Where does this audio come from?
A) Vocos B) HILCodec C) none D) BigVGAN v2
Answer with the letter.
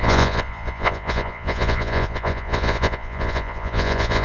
A